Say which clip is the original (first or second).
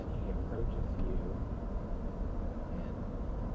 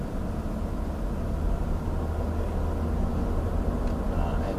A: second